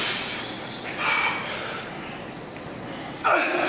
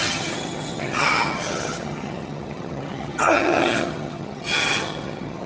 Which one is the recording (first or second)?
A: first